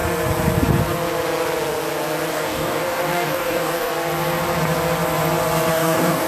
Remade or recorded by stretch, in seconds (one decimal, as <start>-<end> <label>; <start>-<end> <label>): 0.0-2.3 recorded; 2.3-3.9 remade; 3.9-5.7 recorded; 5.7-6.3 remade